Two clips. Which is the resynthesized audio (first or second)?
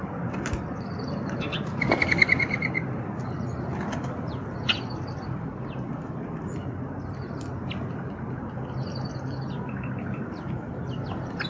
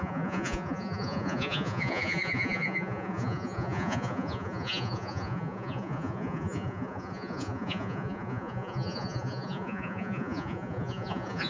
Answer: second